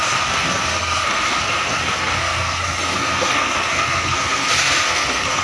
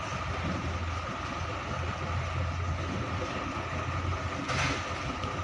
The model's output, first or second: first